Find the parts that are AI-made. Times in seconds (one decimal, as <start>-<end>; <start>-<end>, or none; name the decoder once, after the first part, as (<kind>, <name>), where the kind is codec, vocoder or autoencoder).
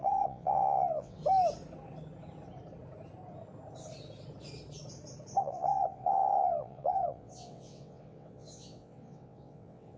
0.0-1.2 (vocoder, WaveNeXt); 5.4-10.0